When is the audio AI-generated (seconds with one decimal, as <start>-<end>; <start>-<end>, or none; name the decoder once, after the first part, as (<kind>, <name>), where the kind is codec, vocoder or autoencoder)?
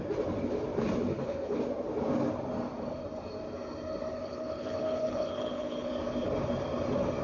1.1-1.6 (codec, HILCodec); 4.1-5.9